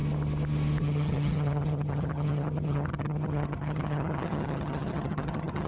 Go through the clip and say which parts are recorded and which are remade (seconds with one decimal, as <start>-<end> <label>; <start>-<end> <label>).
0.0-0.8 recorded; 0.8-5.7 remade